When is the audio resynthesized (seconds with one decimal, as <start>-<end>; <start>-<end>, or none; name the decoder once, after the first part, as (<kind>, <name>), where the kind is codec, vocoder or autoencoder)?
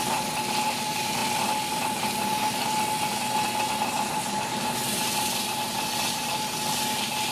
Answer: 1.2-3.5 (vocoder, BigVGAN v2); 4.8-5.9